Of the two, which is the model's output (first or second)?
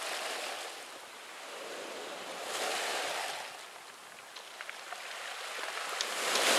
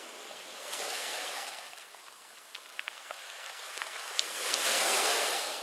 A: second